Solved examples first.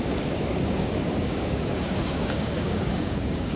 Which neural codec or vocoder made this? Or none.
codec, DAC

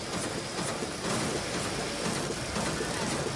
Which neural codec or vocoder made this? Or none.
none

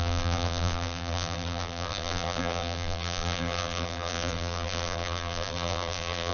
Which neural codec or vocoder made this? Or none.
vocoder, BigVGAN v2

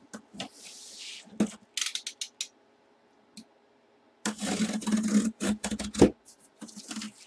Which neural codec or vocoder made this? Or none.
none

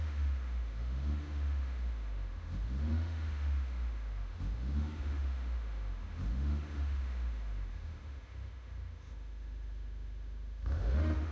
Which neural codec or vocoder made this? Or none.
autoencoder, DAC-VAE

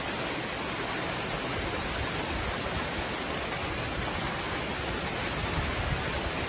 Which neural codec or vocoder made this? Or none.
none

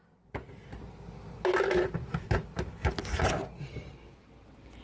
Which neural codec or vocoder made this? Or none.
none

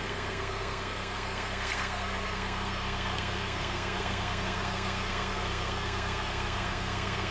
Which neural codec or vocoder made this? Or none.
codec, SNAC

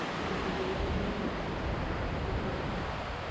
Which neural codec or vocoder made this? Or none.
none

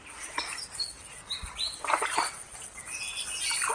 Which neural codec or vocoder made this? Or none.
none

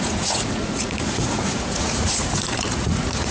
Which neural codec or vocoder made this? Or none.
vocoder, Vocos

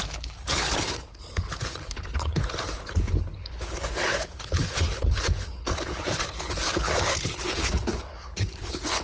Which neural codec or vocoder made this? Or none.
codec, HILCodec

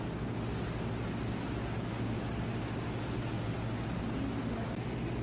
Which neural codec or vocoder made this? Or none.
none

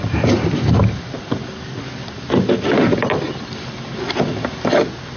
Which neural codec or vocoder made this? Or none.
none